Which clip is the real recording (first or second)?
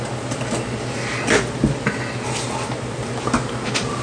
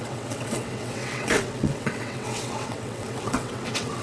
first